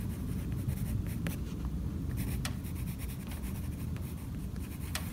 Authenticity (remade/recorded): remade